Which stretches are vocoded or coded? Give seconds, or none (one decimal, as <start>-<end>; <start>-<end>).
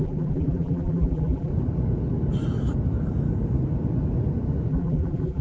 0.0-1.5; 4.7-5.4